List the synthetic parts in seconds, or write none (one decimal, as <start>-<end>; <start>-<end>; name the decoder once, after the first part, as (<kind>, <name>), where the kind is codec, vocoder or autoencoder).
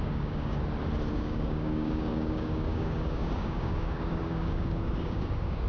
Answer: 0.0-0.6 (codec, DAC); 1.1-5.7